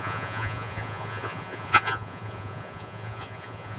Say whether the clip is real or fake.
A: fake